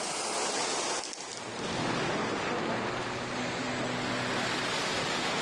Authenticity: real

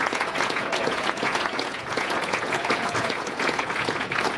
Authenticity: fake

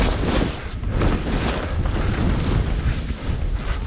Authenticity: real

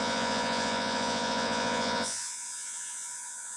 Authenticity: fake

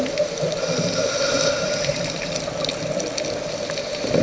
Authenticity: real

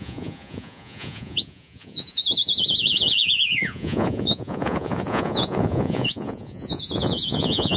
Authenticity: fake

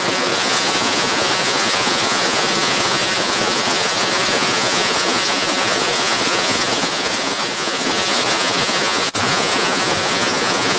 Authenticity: fake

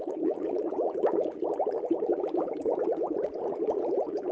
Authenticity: fake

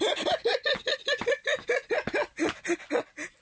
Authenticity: real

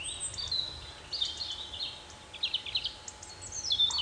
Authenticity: real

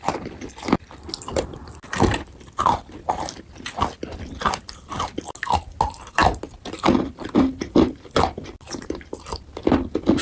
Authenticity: real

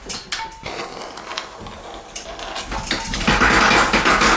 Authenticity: real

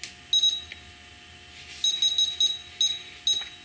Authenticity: real